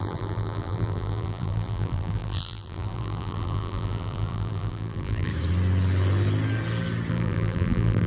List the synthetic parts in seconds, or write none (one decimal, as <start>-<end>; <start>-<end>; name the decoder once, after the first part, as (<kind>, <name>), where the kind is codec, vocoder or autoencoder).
0.0-5.3 (vocoder, BigVGAN v2); 7.1-8.1